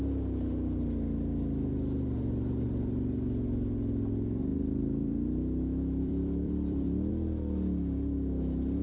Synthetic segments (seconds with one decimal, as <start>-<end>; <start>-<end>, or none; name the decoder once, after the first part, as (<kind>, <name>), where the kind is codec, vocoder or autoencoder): 4.5-7.1 (vocoder, BigVGAN v2)